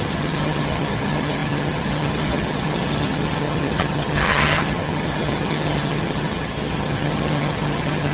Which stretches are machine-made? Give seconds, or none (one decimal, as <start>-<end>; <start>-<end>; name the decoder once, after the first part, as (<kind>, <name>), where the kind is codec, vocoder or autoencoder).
0.0-8.1 (vocoder, HiFi-GAN)